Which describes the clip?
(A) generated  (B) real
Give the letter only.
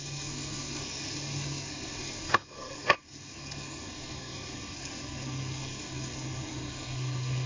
A